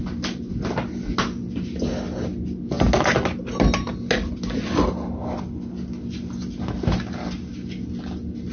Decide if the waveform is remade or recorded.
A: recorded